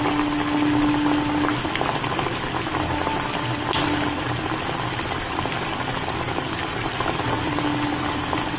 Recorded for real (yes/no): yes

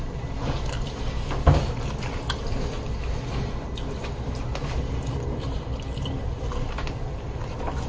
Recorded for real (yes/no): yes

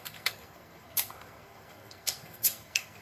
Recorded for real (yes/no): no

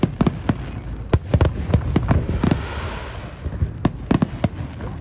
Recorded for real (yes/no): yes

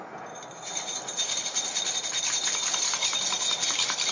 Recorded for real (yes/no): yes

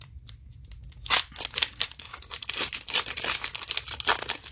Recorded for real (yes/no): yes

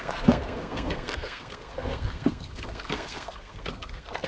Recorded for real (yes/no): no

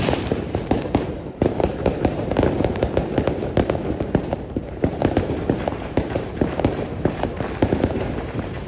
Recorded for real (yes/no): no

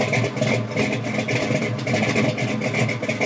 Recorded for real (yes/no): yes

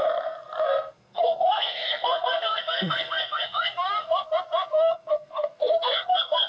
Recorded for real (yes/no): no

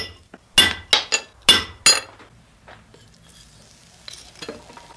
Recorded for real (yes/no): yes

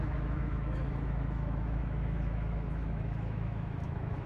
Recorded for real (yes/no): no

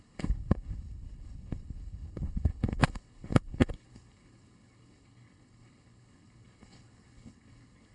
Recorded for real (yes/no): no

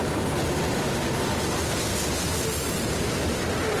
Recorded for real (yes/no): yes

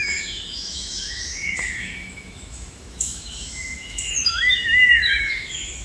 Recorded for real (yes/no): no